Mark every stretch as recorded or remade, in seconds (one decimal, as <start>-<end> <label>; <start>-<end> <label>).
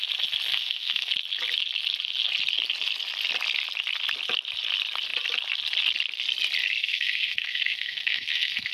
0.0-0.5 recorded; 0.5-1.1 remade; 1.1-6.8 recorded; 6.8-8.7 remade